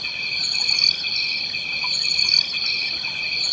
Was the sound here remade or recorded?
recorded